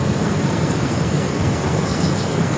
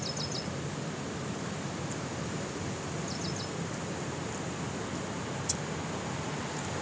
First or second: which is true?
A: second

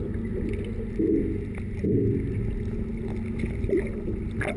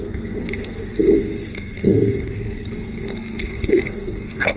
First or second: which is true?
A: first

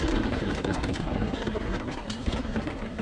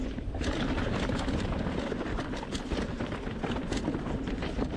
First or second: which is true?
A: second